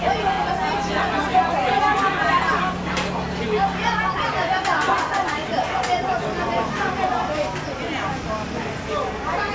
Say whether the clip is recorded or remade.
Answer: recorded